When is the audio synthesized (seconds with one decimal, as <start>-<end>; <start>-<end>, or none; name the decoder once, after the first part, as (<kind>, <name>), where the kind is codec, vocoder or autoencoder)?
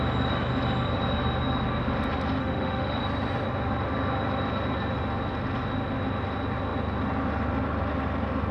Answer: 2.4-3.0 (autoencoder, DAC-VAE)